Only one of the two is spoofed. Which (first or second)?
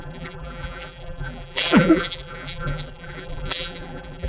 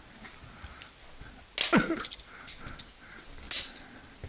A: first